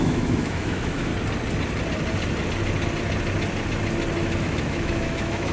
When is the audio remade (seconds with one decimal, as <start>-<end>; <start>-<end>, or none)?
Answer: 0.0-1.1; 4.4-5.5